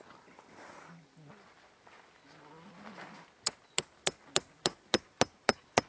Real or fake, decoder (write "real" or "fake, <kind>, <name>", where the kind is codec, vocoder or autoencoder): real